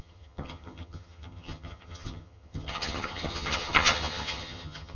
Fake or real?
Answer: fake